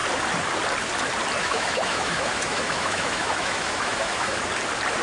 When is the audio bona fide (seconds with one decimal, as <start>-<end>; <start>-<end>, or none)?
0.0-1.4; 4.4-5.0